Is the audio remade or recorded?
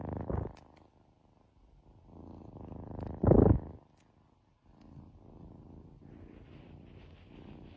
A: recorded